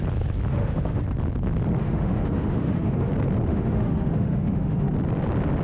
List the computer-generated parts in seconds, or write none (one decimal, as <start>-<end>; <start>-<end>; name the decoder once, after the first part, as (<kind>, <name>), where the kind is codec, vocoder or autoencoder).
0.5-1.0 (autoencoder, DAC-VAE); 1.8-3.1; 3.5-4.9